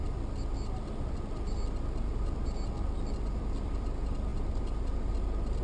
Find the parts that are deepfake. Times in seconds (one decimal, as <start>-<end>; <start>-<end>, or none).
none